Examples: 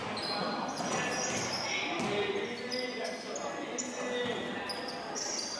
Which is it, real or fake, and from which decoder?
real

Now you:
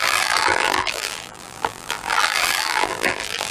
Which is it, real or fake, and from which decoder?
fake, vocoder, BigVGAN v2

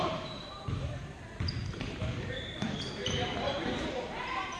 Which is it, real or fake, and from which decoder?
fake, vocoder, BigVGAN v2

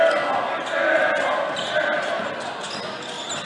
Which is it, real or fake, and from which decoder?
real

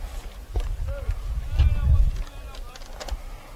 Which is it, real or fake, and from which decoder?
real